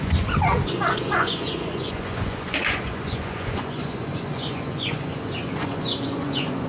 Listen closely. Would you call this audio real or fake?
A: fake